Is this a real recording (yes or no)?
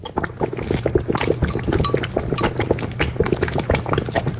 yes